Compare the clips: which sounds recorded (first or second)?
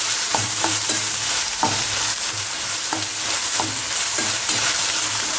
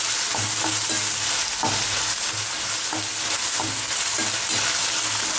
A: second